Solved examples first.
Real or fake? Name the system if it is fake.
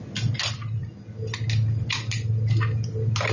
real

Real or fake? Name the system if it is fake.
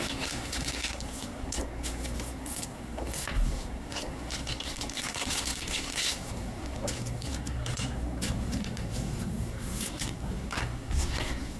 fake, codec, SNAC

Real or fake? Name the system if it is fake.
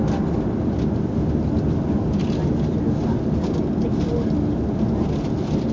real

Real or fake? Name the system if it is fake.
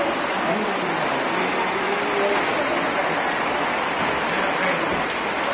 real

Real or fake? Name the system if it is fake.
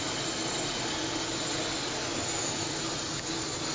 real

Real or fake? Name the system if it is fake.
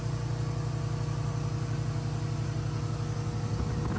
real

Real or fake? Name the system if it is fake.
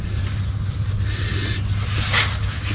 real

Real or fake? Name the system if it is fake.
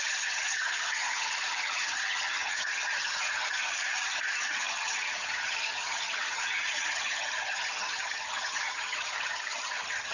fake, vocoder, HiFi-GAN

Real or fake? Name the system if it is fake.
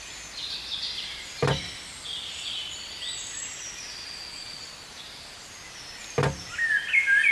real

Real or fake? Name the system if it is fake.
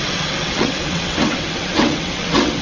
fake, vocoder, WaveNeXt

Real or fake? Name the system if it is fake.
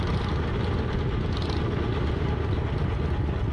real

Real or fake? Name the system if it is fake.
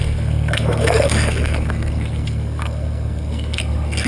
fake, codec, SNAC